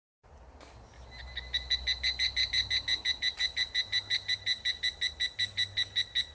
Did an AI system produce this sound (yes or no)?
no